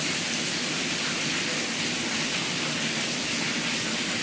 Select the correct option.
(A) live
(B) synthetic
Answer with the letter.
A